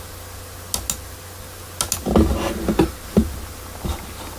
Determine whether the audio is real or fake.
real